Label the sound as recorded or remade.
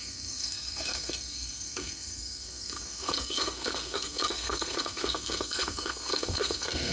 remade